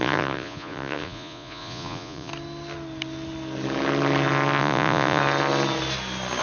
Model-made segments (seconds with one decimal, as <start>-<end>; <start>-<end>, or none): 0.0-2.3; 4.6-5.2